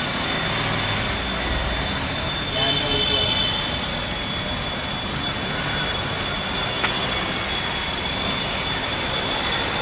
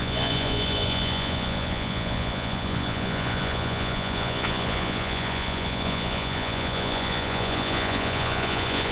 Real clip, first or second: first